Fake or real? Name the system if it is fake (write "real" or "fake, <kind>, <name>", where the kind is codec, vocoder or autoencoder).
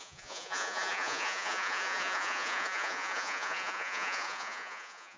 fake, vocoder, Vocos